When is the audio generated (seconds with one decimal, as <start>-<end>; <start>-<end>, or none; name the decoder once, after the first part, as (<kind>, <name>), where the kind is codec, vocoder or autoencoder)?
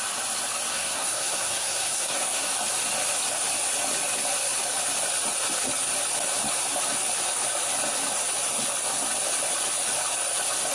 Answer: 0.7-2.5 (codec, SNAC)